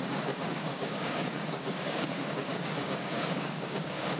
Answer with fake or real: fake